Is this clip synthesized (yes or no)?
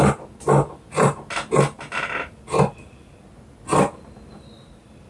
no